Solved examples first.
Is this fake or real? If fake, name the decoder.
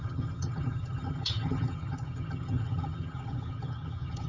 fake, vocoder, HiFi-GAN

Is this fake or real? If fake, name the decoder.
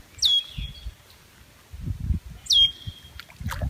real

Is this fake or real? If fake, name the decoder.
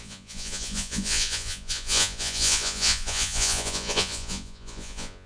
fake, vocoder, Vocos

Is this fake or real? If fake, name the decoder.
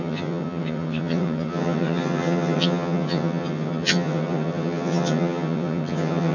fake, vocoder, HiFi-GAN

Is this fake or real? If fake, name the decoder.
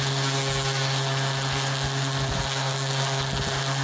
real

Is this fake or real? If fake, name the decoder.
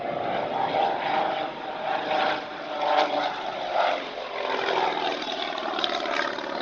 fake, vocoder, BigVGAN v2